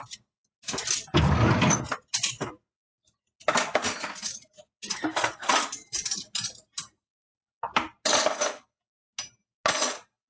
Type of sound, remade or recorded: recorded